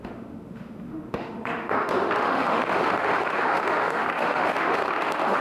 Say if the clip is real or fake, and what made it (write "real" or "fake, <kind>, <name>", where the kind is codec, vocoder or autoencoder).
fake, autoencoder, DAC-VAE